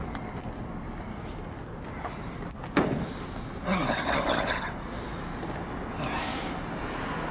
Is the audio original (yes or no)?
yes